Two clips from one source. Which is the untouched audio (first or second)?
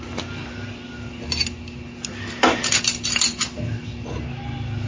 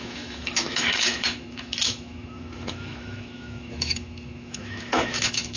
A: first